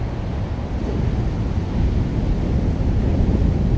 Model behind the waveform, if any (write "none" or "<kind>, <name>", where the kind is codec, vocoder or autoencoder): none